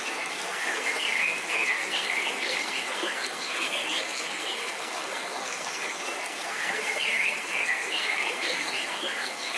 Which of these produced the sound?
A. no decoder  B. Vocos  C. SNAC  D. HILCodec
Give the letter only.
C